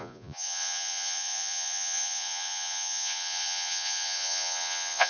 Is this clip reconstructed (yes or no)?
yes